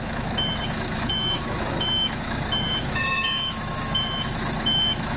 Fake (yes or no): yes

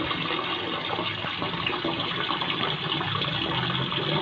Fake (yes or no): no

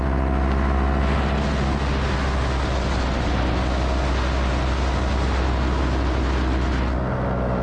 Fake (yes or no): no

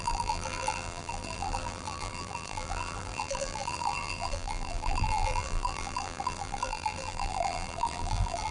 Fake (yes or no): yes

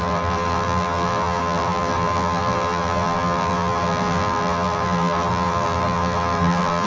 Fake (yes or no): yes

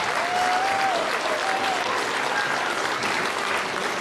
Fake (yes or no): no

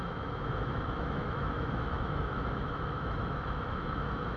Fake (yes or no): yes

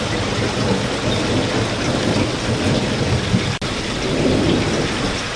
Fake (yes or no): no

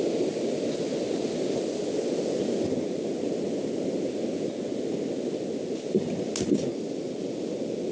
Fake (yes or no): no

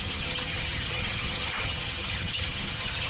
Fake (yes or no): yes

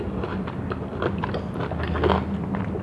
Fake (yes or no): no